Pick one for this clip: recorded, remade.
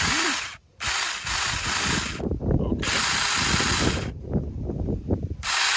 recorded